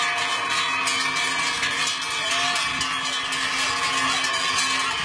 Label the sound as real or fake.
real